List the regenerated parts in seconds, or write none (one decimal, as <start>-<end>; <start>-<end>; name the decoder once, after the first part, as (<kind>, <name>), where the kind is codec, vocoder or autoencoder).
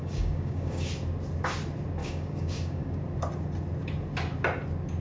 0.0-0.9 (codec, DAC); 2.0-3.0